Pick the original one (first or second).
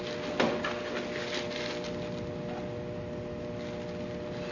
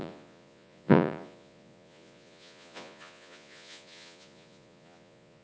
first